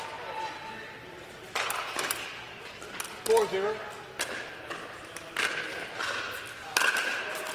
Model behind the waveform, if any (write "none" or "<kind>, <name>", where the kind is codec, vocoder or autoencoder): none